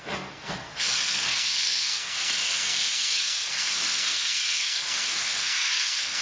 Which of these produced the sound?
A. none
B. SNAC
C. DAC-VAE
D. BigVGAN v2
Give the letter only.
B